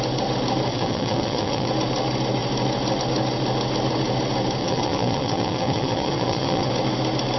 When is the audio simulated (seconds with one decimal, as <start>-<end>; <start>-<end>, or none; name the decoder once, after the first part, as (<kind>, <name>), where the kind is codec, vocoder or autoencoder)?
0.7-1.7 (vocoder, WaveNeXt); 4.6-6.7

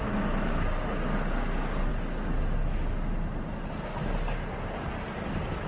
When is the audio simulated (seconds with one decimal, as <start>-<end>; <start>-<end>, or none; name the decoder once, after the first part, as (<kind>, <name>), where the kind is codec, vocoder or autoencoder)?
none

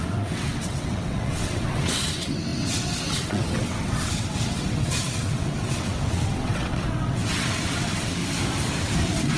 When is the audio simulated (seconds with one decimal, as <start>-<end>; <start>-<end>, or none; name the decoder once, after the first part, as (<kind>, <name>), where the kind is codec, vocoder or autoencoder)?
0.0-8.2 (vocoder, WaveNeXt); 8.8-9.4